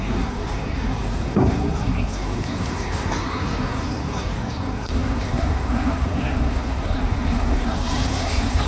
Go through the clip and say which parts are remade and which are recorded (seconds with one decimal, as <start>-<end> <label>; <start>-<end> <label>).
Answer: 0.0-8.7 remade